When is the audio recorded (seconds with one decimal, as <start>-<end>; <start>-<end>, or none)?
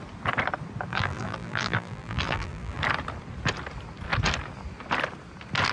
0.0-0.9; 2.8-5.7